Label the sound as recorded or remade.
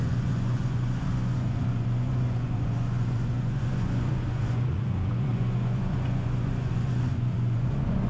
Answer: remade